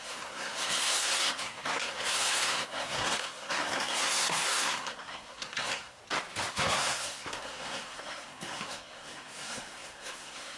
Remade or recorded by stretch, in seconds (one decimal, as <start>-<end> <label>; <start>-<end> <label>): 0.0-6.0 remade; 6.0-6.5 recorded; 6.5-10.6 remade